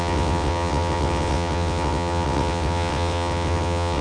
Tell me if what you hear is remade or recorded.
remade